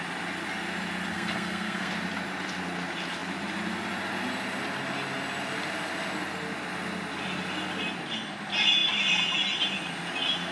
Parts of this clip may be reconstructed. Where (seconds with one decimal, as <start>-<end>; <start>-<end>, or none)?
1.1-1.9